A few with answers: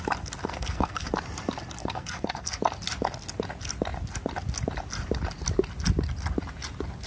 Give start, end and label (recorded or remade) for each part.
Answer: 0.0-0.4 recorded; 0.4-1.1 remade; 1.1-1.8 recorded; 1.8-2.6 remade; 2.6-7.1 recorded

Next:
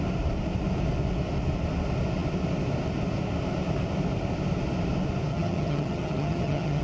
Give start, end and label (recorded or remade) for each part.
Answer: 0.0-5.3 recorded; 5.3-6.8 remade

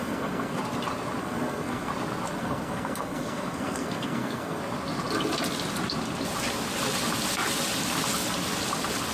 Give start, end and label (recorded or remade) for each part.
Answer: 0.0-0.6 remade; 0.6-1.2 recorded; 1.2-1.9 remade; 1.9-2.4 recorded; 2.4-4.6 remade; 4.6-9.1 recorded